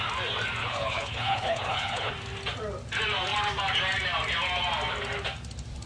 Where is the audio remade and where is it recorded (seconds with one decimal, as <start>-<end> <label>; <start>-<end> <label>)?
0.0-0.6 recorded; 0.6-2.1 remade; 2.1-5.9 recorded